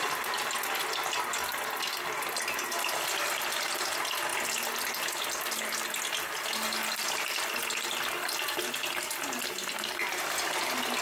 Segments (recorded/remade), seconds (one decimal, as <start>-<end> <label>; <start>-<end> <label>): 0.0-11.0 recorded